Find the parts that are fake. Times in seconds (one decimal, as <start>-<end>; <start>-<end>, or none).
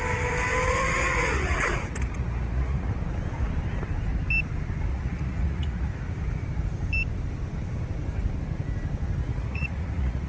0.7-2.9; 4.9-5.9; 9.2-10.3